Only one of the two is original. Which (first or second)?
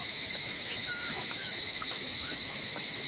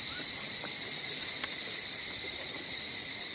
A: second